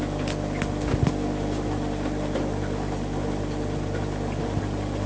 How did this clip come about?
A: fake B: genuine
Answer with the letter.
B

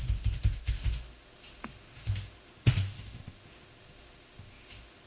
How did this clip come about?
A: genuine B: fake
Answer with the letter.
B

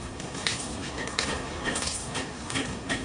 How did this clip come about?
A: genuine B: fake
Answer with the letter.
B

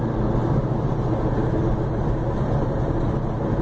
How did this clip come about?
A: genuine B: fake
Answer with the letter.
A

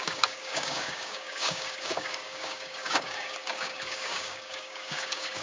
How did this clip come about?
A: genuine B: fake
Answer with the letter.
B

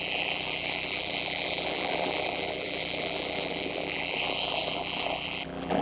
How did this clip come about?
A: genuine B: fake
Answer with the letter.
B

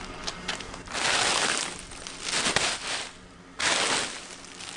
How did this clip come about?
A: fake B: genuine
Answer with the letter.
B